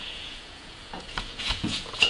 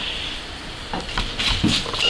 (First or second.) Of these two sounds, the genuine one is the second